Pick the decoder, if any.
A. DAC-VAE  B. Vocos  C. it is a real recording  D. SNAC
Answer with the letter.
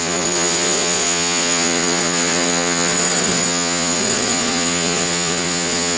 B